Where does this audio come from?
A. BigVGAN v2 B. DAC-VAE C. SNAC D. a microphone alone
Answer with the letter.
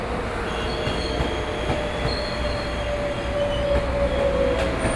D